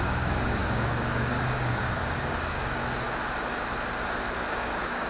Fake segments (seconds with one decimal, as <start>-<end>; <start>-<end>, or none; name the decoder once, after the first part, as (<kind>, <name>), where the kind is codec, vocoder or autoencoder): 0.0-2.8 (codec, DAC); 4.5-5.1